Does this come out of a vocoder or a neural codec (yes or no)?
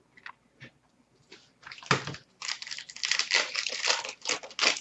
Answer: no